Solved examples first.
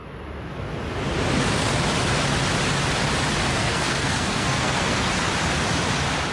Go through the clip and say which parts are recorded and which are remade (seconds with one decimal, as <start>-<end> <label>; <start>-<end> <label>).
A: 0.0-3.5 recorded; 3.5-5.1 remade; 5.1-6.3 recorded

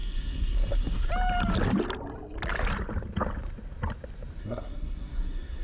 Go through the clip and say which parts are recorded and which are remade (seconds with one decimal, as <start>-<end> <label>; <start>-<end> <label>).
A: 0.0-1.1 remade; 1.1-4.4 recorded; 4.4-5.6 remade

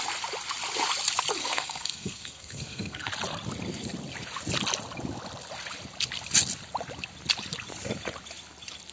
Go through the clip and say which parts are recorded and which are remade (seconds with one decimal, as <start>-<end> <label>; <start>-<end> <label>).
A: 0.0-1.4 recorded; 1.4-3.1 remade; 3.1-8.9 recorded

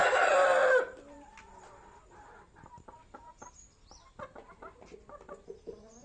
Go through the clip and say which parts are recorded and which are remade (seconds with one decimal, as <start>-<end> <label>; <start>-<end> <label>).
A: 0.0-6.0 recorded